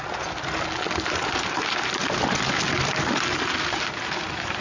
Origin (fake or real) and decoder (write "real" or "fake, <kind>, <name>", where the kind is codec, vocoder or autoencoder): real